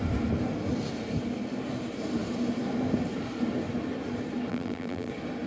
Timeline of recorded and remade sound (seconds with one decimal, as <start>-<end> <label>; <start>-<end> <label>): 0.0-4.5 recorded; 4.5-5.1 remade; 5.1-5.5 recorded